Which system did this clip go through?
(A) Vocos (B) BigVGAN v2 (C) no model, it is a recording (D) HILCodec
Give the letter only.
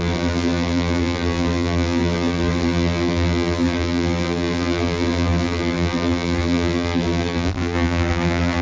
B